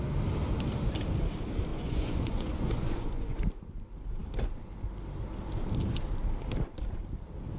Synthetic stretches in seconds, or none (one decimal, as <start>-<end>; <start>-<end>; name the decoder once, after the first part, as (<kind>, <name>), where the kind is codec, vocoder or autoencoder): 1.7-3.4 (vocoder, Vocos)